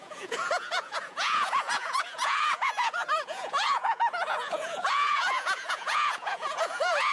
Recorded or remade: remade